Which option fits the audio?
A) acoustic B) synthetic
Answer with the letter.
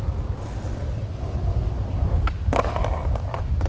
A